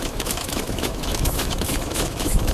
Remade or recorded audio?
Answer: remade